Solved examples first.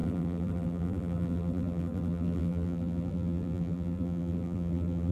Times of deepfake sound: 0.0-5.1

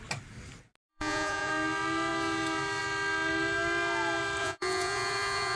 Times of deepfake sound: 0.9-1.5; 4.4-5.6

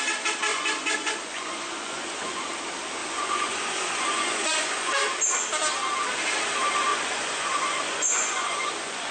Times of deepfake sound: 0.5-2.5; 3.0-4.9; 6.9-9.1

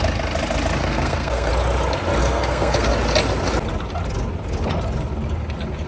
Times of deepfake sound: 0.8-1.5; 2.2-2.9

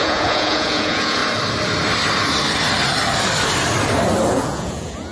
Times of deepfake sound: 0.0-1.2; 4.3-5.1

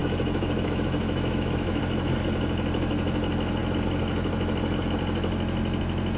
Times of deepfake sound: 0.0-1.8

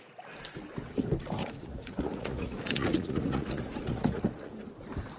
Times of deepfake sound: 1.4-4.5

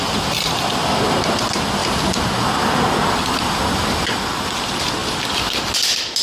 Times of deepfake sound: none